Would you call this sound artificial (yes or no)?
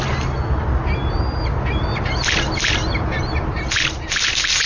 no